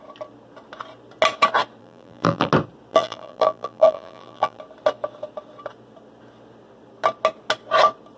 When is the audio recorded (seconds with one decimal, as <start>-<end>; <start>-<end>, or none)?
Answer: 0.0-1.8; 2.5-2.9; 4.6-8.2